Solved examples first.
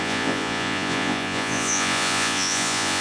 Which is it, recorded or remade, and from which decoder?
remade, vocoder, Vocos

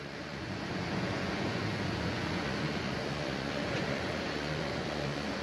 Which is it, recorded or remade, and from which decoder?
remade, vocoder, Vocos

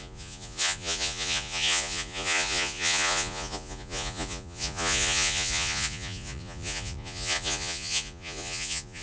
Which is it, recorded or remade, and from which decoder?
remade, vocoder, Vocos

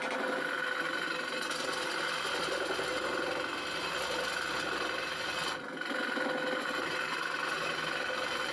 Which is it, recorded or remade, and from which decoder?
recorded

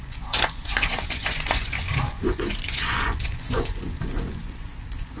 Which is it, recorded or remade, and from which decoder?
remade, vocoder, Vocos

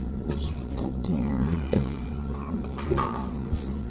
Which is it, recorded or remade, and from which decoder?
remade, vocoder, Vocos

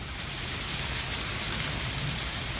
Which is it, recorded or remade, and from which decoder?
recorded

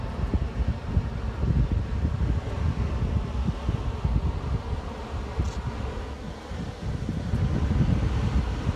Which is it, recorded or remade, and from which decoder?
recorded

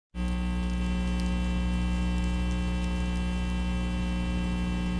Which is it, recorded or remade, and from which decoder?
recorded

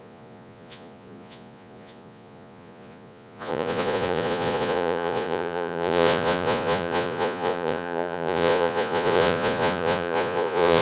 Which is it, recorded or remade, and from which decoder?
remade, vocoder, Vocos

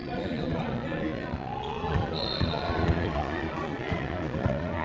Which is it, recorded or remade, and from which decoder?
remade, vocoder, Vocos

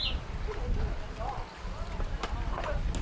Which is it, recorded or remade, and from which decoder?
recorded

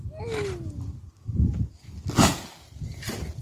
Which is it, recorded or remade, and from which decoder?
recorded